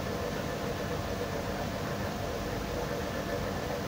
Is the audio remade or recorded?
remade